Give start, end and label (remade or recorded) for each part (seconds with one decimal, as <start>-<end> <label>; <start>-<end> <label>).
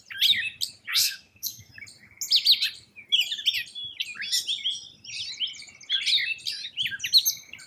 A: 0.0-1.0 recorded; 1.0-1.7 remade; 1.7-7.7 recorded